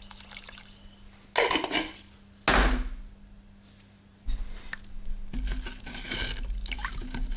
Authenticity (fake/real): real